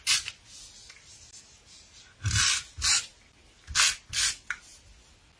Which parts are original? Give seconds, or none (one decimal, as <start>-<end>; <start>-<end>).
0.0-5.4